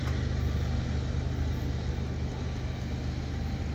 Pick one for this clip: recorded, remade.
recorded